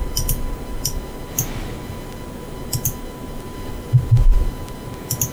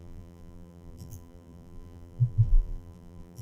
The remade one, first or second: second